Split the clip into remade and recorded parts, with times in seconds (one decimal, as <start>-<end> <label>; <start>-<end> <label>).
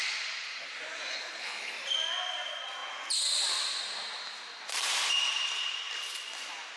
0.0-1.1 recorded; 1.1-1.7 remade; 1.7-6.8 recorded